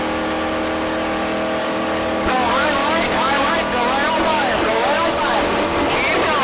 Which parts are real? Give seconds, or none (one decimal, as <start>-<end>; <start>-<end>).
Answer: 0.0-1.6; 3.5-4.3; 5.4-6.4